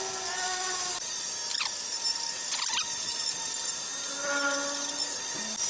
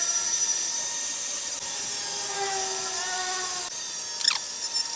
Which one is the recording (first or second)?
second